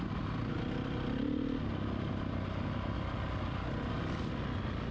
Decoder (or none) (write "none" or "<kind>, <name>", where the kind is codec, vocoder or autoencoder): none